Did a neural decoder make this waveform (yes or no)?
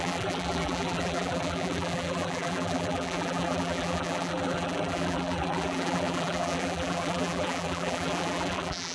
yes